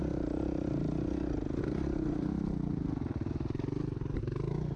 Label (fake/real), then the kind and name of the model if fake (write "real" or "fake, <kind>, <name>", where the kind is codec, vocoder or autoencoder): real